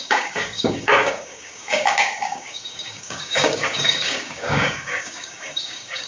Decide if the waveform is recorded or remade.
remade